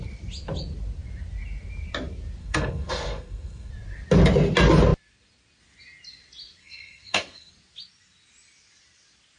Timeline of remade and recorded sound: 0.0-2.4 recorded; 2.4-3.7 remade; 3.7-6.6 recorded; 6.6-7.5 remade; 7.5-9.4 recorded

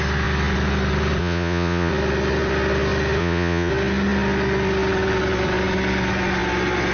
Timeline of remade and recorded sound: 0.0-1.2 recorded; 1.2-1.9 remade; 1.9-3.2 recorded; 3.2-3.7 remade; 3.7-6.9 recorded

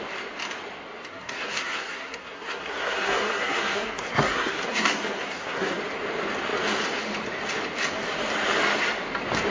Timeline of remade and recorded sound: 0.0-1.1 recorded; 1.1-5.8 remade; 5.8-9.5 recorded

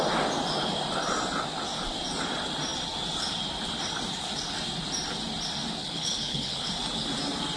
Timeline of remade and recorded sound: 0.0-5.8 recorded; 5.8-6.7 remade; 6.7-7.6 recorded